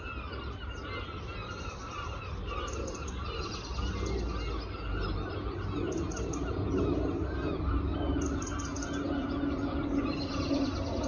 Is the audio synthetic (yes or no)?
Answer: no